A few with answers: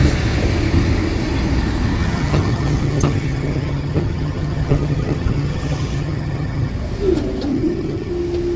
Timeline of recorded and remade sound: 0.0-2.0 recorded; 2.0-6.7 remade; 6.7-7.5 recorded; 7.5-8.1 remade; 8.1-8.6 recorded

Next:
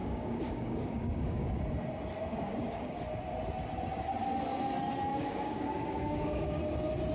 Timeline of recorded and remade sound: 0.0-1.6 remade; 1.6-2.3 recorded; 2.3-3.0 remade; 3.0-5.1 recorded; 5.1-6.6 remade; 6.6-7.1 recorded

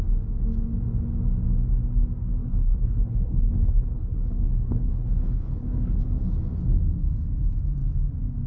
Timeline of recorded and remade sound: 0.0-2.4 recorded; 2.4-5.9 remade; 5.9-8.5 recorded

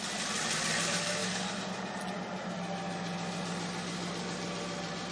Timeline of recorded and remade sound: 0.0-5.1 recorded

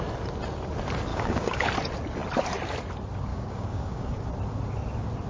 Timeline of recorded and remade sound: 0.0-1.1 recorded; 1.1-1.7 remade; 1.7-3.3 recorded; 3.3-4.3 remade; 4.3-5.3 recorded

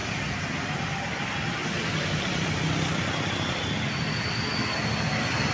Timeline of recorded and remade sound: 0.0-5.5 recorded